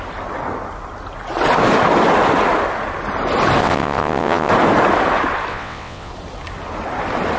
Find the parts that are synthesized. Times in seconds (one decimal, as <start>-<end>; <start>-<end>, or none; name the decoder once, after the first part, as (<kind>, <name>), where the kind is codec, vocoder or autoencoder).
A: 3.6-4.5 (vocoder, WaveNeXt); 5.5-6.1